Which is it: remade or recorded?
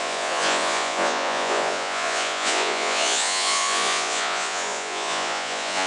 remade